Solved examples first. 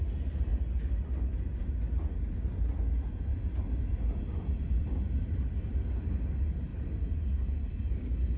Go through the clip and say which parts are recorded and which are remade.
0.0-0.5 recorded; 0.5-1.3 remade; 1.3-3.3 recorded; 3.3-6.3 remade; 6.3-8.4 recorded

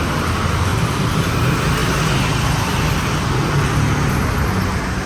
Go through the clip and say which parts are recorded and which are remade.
0.0-0.7 recorded; 0.7-1.3 remade; 1.3-5.1 recorded

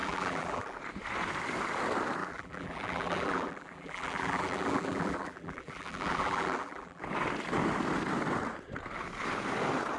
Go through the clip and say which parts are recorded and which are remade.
0.0-0.8 remade; 0.8-2.2 recorded; 2.2-7.0 remade; 7.0-10.0 recorded